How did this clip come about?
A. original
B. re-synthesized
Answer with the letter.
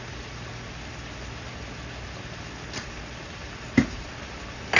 A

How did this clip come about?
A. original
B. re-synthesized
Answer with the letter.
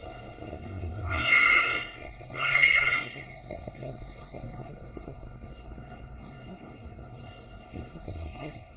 B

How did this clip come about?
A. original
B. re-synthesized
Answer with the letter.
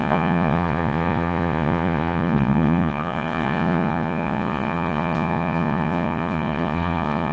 B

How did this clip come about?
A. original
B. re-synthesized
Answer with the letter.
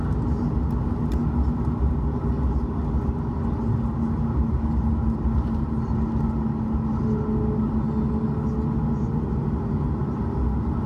A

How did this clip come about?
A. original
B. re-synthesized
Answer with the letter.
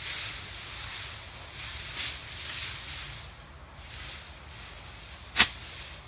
A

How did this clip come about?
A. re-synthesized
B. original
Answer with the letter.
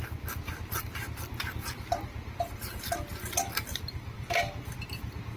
B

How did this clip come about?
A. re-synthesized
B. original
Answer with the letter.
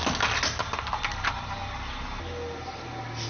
B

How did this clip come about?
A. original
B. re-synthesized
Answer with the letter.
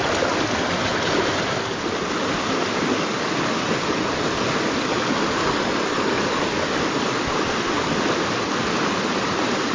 A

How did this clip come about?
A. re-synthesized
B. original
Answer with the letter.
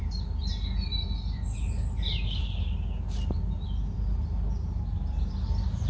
B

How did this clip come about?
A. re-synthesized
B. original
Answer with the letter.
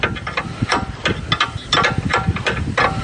B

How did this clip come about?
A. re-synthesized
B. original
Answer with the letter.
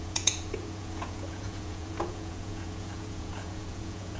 A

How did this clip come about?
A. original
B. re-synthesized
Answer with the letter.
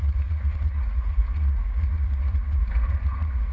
B